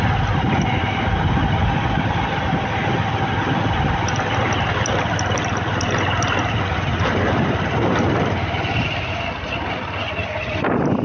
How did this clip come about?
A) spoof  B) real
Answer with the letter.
B